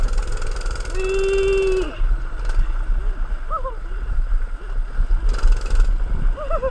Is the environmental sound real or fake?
real